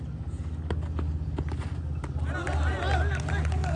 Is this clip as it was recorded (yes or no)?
yes